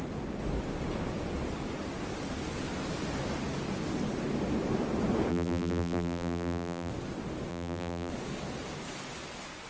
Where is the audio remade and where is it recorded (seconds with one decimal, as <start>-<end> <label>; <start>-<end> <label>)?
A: 0.0-5.3 recorded; 5.3-6.9 remade; 6.9-7.5 recorded; 7.5-8.1 remade; 8.1-9.7 recorded

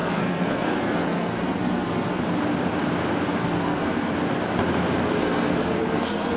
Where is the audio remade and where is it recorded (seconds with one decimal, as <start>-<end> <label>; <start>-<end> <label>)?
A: 0.0-2.2 remade; 2.2-3.4 recorded; 3.4-4.1 remade; 4.1-5.2 recorded; 5.2-6.4 remade